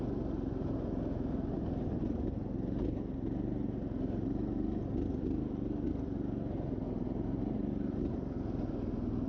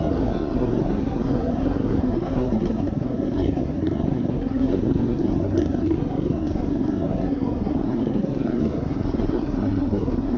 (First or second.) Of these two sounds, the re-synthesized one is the second